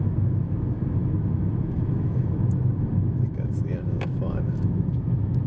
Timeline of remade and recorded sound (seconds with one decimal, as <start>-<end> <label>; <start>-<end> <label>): 0.0-5.5 remade